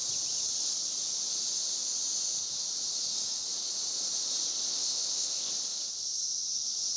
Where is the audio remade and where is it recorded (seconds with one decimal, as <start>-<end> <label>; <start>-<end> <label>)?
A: 0.0-4.7 recorded; 4.7-5.5 remade; 5.5-7.0 recorded